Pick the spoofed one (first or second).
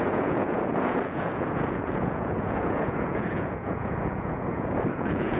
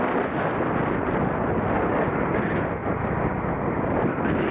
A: first